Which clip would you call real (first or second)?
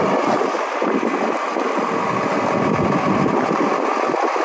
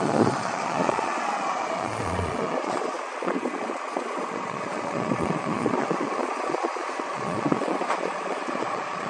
first